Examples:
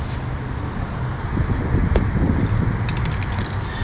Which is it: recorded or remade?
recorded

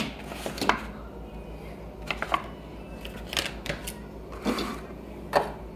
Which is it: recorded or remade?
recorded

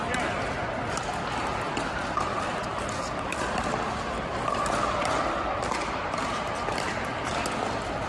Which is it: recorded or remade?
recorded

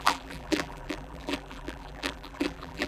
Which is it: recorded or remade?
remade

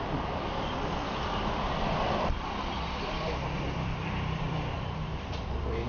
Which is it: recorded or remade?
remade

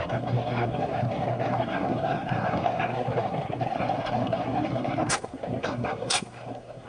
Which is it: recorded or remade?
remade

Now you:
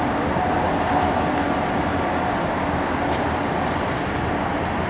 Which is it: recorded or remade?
recorded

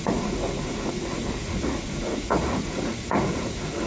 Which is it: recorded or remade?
remade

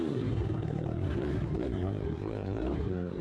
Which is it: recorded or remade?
remade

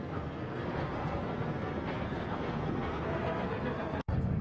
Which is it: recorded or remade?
remade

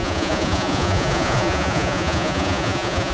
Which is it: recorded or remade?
remade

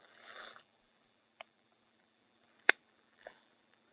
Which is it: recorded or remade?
remade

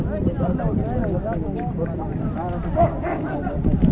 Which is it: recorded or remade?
recorded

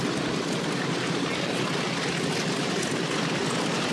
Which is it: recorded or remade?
recorded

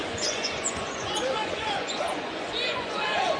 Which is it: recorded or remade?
remade